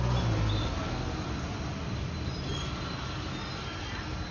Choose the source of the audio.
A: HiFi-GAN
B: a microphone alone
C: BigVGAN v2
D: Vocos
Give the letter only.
B